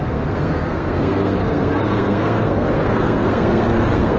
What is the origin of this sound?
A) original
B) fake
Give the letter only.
B